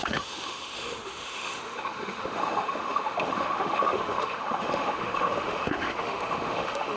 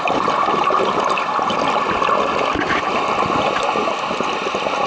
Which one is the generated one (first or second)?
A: first